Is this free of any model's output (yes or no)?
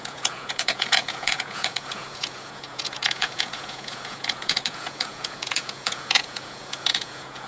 no